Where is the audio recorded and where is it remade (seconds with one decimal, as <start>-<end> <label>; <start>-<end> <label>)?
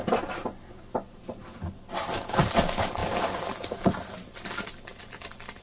0.0-5.6 recorded